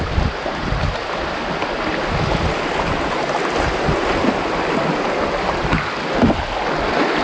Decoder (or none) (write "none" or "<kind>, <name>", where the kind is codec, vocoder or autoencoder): none